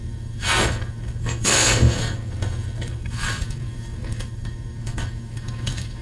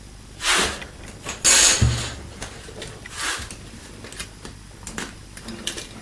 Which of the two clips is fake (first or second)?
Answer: first